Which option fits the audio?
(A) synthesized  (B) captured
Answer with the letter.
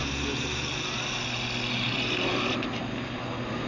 B